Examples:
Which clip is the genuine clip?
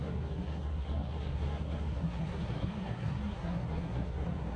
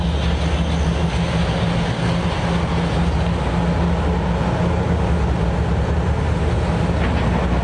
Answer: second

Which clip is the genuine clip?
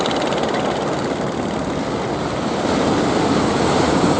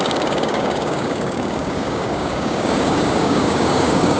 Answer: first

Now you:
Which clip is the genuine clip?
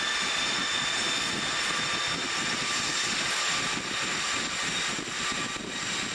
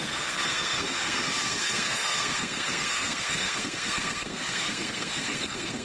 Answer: first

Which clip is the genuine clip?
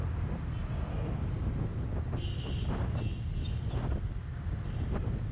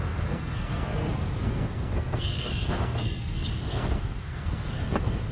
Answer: first